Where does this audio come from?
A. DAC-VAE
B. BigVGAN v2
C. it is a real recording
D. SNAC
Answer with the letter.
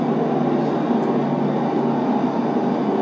C